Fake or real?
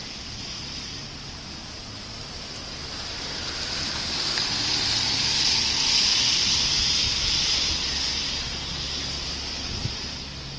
real